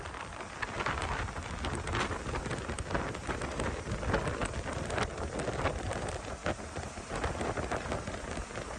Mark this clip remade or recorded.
recorded